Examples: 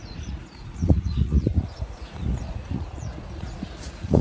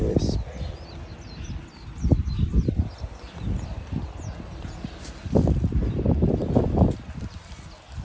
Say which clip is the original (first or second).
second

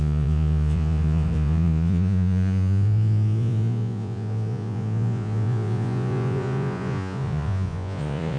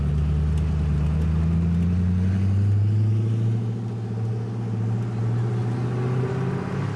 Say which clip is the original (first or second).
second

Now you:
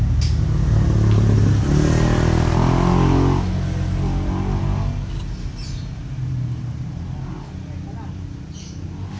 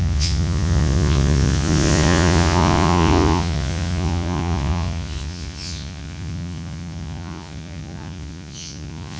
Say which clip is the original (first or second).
first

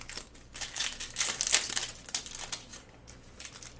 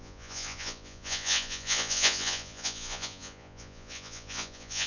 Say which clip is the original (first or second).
first